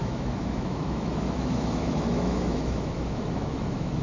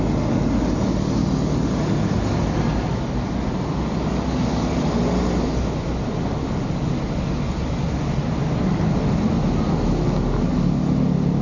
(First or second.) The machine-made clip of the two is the first